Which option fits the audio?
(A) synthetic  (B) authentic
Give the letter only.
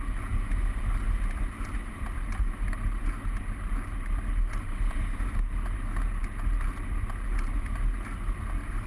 B